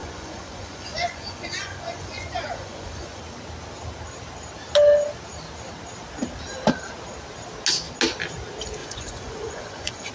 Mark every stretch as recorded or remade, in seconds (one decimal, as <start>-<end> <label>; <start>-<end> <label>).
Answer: 0.0-3.2 remade; 3.2-8.8 recorded; 8.8-10.1 remade